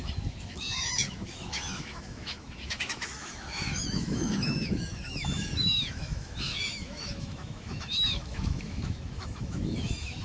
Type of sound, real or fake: fake